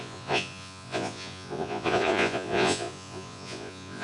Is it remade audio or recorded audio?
remade